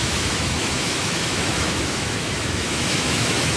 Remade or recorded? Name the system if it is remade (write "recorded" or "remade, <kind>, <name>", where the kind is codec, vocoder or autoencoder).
remade, autoencoder, DAC-VAE